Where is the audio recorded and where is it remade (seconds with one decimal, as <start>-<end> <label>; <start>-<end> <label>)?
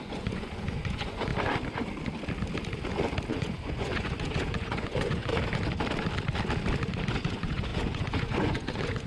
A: 0.0-1.3 remade; 1.3-3.3 recorded; 3.3-5.3 remade; 5.3-6.9 recorded; 6.9-9.1 remade